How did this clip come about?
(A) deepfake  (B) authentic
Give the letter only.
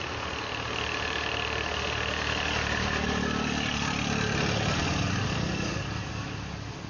B